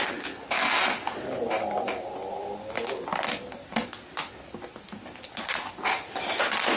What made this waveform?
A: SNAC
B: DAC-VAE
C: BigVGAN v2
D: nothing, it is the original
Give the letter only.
D